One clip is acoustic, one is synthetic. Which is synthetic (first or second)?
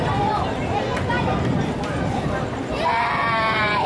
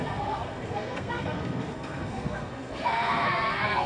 second